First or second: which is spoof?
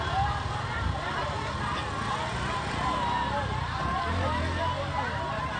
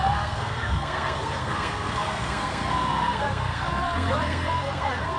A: second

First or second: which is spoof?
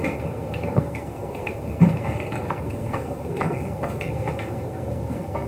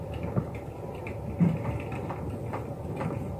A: first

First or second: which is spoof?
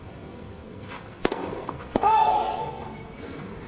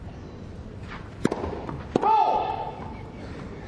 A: first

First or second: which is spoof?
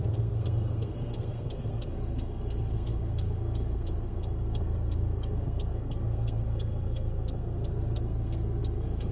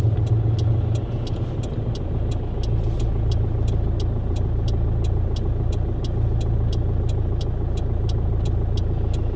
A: first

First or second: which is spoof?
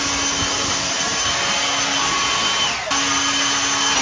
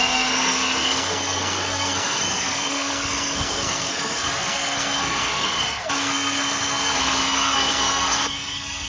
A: second